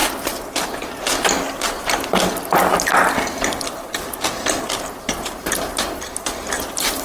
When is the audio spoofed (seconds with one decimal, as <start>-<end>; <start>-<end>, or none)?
none